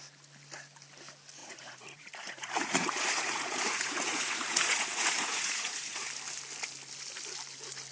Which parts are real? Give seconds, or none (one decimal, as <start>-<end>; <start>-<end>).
0.0-1.4; 6.1-7.9

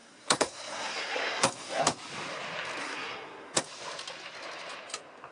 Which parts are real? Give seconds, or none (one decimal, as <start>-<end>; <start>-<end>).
1.8-2.8; 3.6-5.3

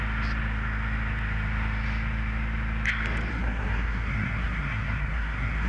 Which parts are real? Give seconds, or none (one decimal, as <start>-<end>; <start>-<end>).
0.0-3.3

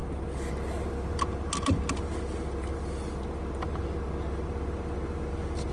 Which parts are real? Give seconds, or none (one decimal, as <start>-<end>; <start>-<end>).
0.0-5.7

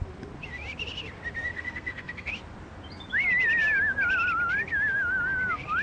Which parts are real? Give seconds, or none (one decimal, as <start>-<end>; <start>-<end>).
0.0-1.5; 2.3-5.8

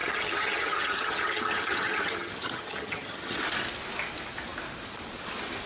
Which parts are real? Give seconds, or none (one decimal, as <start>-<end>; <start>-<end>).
3.4-5.7

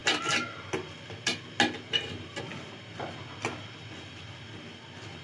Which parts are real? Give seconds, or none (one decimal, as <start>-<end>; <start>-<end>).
0.0-5.2

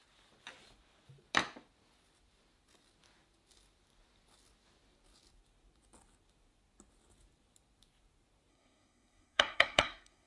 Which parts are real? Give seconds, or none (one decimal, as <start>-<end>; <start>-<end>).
0.0-8.5